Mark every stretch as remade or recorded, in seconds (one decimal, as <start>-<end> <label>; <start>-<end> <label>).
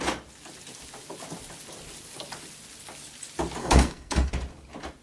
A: 0.0-3.6 recorded; 3.6-4.3 remade; 4.3-5.0 recorded